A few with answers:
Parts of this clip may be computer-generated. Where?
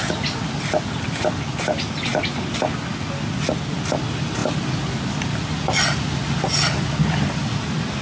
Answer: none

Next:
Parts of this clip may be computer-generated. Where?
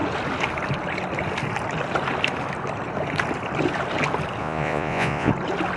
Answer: 4.4-5.3 (vocoder, Vocos)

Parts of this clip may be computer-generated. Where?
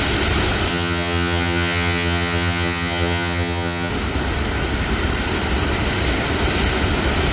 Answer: 0.7-3.9 (vocoder, HiFi-GAN)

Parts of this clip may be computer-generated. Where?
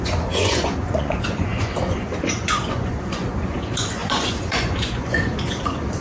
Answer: 0.0-6.0 (vocoder, Vocos)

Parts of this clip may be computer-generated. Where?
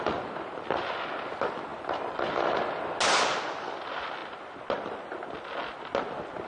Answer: none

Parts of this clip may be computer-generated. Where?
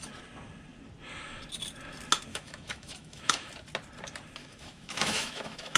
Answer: 2.3-3.5 (autoencoder, DAC-VAE); 4.4-5.8